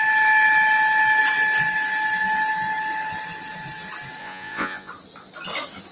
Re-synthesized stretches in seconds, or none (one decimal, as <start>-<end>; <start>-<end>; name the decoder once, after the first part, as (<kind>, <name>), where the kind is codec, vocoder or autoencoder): 4.2-4.9 (vocoder, Vocos)